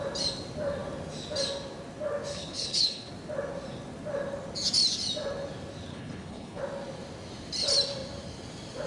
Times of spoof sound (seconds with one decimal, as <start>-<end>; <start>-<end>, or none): 2.3-3.1; 5.9-6.6